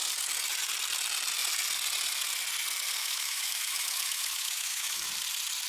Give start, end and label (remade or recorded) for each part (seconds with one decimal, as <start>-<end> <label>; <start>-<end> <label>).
0.0-3.0 recorded; 3.0-5.1 remade; 5.1-5.7 recorded